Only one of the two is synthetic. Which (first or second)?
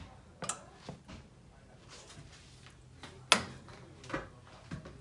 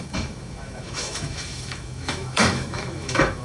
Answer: second